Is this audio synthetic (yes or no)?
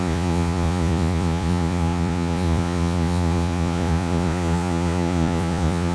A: yes